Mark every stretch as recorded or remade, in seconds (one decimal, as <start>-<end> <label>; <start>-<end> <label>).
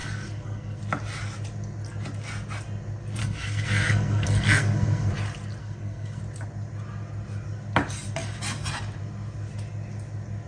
0.0-0.8 remade; 0.8-3.2 recorded; 3.2-5.1 remade; 5.1-5.6 recorded; 5.6-6.2 remade; 6.2-10.5 recorded